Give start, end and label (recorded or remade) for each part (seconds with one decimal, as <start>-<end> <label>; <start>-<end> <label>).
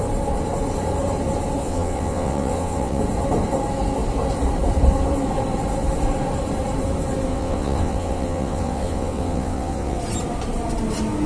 0.0-1.6 recorded; 1.6-3.0 remade; 3.0-7.3 recorded; 7.3-10.0 remade; 10.0-11.3 recorded